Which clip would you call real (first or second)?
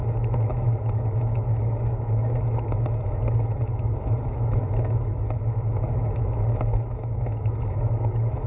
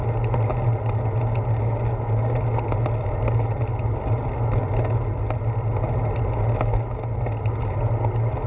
second